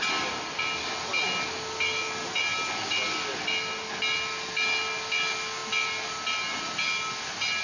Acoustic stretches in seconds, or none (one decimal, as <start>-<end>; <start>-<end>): 0.0-7.6